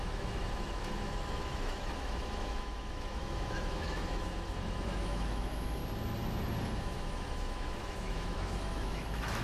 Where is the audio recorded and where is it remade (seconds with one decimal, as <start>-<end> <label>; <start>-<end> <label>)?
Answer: 0.0-5.8 remade; 5.8-6.8 recorded; 6.8-9.4 remade